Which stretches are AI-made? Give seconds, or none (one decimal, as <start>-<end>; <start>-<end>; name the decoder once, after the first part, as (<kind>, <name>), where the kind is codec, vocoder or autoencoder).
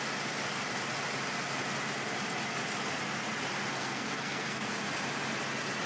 3.7-4.7 (codec, SNAC)